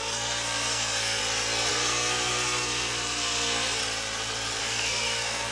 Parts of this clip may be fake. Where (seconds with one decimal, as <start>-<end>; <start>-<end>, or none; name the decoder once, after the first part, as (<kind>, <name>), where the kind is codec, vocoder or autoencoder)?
0.0-1.2 (codec, SNAC); 1.7-3.8; 4.6-5.5